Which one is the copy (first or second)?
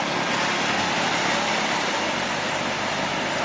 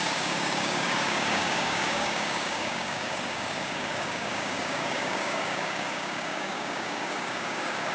second